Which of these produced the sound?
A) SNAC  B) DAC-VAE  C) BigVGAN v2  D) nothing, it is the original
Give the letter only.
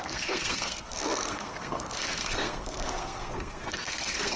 A